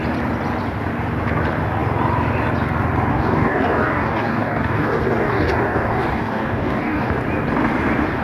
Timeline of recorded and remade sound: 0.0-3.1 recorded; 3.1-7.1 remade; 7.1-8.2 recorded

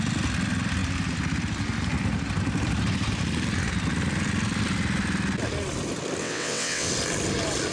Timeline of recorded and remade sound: 0.0-6.2 recorded; 6.2-6.9 remade; 6.9-7.7 recorded